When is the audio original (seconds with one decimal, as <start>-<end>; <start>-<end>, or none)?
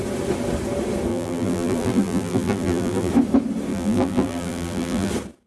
0.0-1.1; 3.1-3.7; 5.1-5.5